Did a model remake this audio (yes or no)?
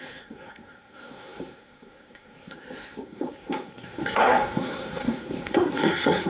yes